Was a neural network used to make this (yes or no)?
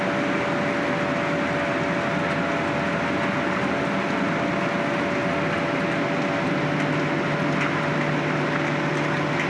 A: no